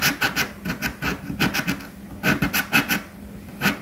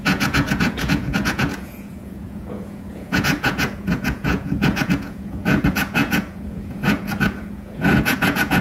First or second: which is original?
first